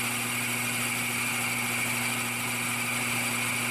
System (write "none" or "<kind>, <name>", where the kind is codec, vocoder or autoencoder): none